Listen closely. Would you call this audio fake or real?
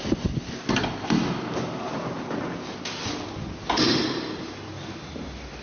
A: real